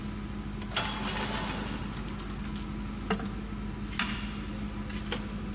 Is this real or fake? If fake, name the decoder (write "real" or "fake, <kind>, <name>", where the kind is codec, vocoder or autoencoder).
real